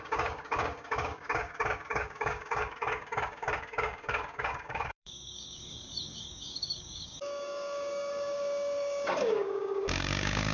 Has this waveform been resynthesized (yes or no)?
yes